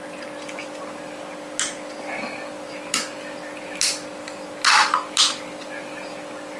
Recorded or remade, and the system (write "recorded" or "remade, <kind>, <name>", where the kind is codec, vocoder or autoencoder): recorded